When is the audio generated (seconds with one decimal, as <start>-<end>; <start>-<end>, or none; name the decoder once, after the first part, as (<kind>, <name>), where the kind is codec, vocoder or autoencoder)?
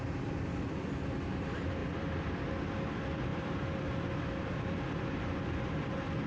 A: 1.8-2.6 (vocoder, BigVGAN v2); 3.3-5.0